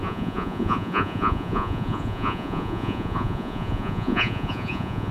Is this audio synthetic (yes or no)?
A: yes